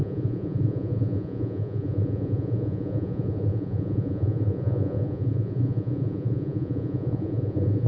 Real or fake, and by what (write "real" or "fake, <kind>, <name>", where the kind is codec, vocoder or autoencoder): fake, vocoder, Vocos